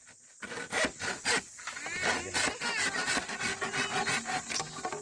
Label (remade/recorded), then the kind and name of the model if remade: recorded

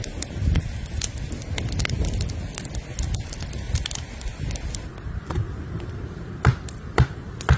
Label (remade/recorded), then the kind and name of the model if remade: recorded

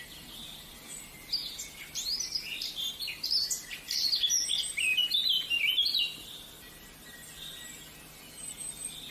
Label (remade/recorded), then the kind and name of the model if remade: recorded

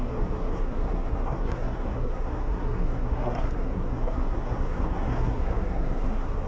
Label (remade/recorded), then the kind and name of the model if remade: remade, codec, SNAC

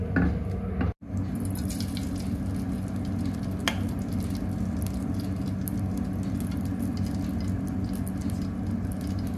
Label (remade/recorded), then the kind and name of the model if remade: recorded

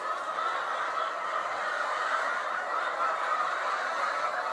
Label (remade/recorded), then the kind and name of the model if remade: recorded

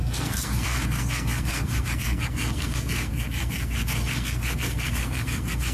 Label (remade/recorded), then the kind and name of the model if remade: remade, codec, SNAC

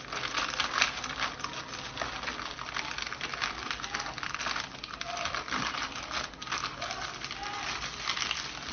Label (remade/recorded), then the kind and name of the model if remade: recorded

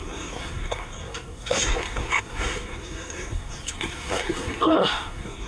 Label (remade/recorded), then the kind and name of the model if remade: remade, codec, SNAC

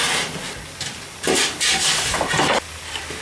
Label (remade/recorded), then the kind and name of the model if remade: recorded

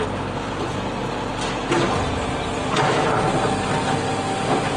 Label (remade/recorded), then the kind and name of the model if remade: recorded